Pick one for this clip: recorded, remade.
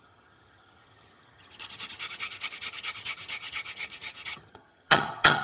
remade